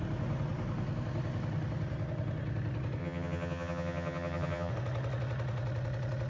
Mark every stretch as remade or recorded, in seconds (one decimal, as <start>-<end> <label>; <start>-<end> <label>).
0.0-3.0 recorded; 3.0-4.7 remade; 4.7-6.3 recorded